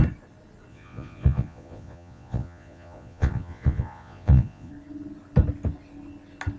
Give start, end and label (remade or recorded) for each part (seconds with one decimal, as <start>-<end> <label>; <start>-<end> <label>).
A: 0.0-0.7 recorded; 0.7-4.7 remade; 4.7-6.6 recorded